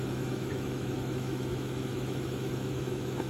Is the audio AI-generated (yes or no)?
yes